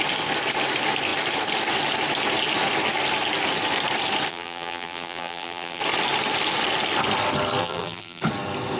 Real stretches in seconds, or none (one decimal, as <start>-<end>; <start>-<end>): 0.0-4.3; 5.8-7.6; 8.2-8.8